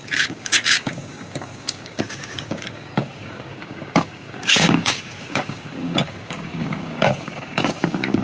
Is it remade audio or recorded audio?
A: remade